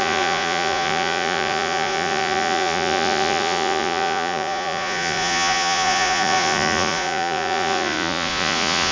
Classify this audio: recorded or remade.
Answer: remade